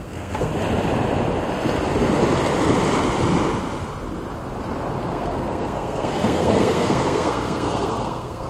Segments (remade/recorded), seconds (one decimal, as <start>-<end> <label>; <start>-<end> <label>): 0.0-0.5 remade; 0.5-5.1 recorded; 5.1-8.5 remade